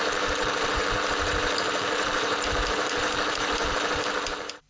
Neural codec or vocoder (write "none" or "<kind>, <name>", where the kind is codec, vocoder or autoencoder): vocoder, BigVGAN v2